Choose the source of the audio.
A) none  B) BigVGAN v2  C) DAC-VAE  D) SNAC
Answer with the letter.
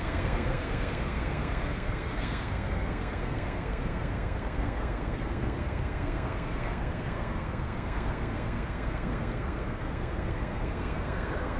D